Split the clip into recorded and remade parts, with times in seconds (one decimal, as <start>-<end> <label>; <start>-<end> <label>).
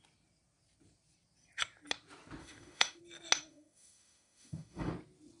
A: 0.0-2.4 recorded; 2.4-3.0 remade; 3.0-3.5 recorded; 3.5-4.9 remade; 4.9-5.4 recorded